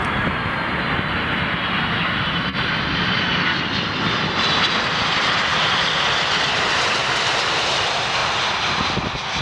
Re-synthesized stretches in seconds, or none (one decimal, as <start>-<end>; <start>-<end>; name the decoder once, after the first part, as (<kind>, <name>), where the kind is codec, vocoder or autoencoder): 0.0-8.2 (vocoder, BigVGAN v2)